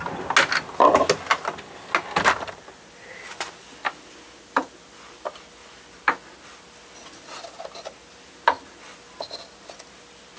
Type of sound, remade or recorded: recorded